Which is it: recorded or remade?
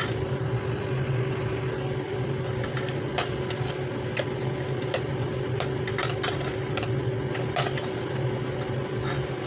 recorded